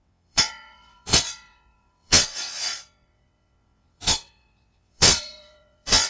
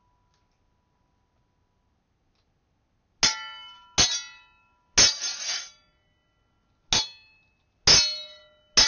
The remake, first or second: first